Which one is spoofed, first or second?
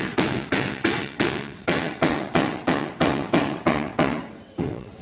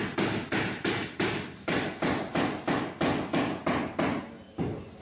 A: first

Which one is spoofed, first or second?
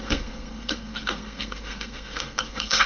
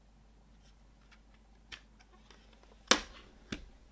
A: first